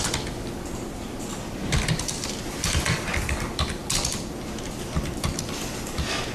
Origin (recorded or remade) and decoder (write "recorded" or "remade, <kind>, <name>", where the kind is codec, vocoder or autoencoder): recorded